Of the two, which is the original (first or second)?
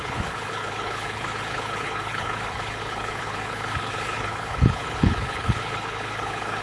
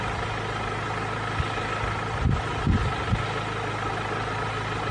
second